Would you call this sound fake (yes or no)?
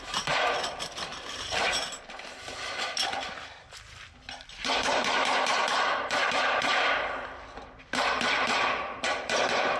yes